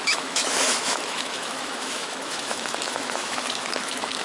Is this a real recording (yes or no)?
no